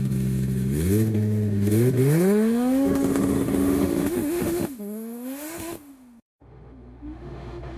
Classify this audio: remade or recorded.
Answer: remade